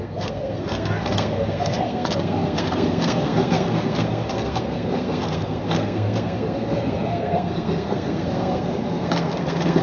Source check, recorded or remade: remade